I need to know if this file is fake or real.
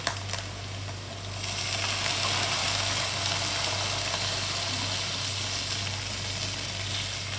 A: real